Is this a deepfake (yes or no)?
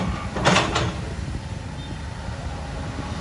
no